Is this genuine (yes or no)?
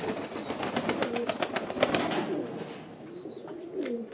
yes